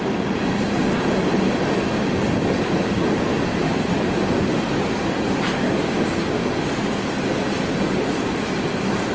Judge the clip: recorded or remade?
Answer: recorded